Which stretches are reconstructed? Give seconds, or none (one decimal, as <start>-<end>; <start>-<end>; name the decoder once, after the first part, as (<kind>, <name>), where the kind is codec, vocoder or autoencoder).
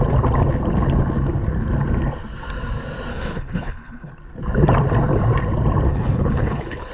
3.1-4.1 (codec, HILCodec); 5.9-6.9